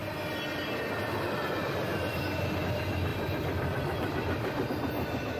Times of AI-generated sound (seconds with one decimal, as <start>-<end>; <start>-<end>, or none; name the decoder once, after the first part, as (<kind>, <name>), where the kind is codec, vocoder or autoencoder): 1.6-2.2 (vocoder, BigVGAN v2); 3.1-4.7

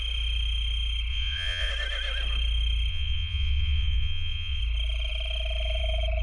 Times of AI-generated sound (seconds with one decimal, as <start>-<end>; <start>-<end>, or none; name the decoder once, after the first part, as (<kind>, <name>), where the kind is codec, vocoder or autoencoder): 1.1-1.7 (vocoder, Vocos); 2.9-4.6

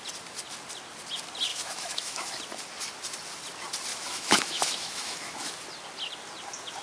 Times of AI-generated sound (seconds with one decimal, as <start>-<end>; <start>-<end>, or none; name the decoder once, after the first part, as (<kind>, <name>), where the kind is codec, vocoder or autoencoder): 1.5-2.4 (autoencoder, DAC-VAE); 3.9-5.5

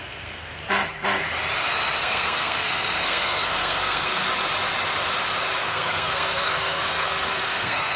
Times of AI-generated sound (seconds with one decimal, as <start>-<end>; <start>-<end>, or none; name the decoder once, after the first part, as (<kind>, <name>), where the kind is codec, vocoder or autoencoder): 0.0-0.6 (codec, SNAC); 2.0-4.2; 5.6-8.0